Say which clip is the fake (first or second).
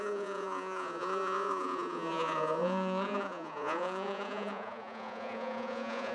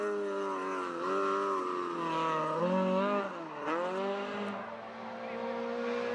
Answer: first